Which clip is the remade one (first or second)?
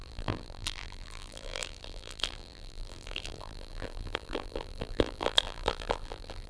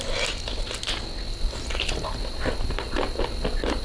first